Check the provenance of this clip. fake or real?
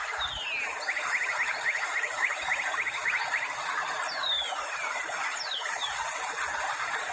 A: real